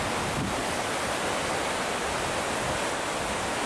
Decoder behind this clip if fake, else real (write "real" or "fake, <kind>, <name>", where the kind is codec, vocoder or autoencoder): real